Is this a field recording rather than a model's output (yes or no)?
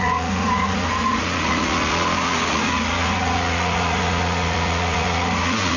no